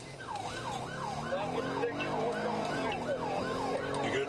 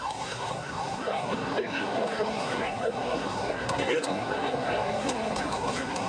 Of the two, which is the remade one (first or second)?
second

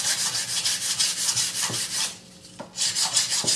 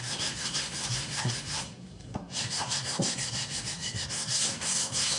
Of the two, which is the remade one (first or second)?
second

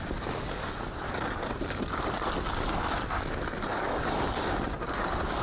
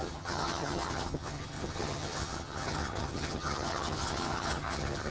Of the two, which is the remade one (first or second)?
second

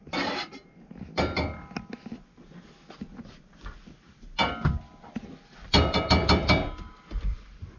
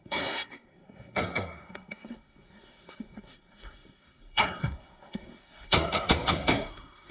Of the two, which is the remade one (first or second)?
second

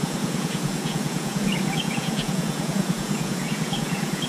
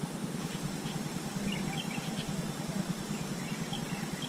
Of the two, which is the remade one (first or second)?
first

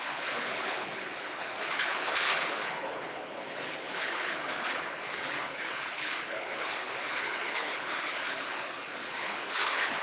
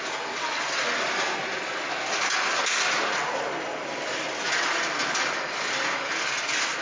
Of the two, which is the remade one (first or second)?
first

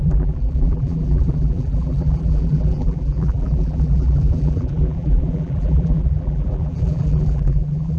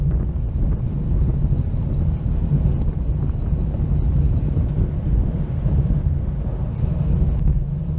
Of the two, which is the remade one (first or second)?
first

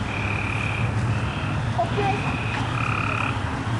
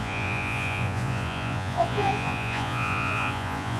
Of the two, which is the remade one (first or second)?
second